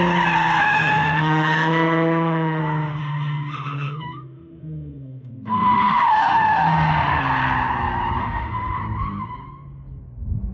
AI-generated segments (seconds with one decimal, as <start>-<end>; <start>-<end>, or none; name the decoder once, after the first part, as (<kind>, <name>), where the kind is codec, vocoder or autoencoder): 0.6-2.6 (autoencoder, DAC-VAE); 3.0-7.2; 8.2-8.8